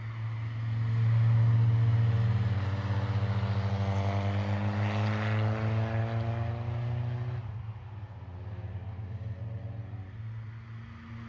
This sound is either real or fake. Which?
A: real